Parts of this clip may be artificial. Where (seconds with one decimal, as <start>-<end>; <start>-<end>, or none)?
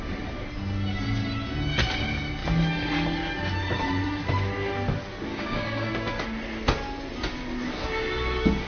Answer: 5.3-5.9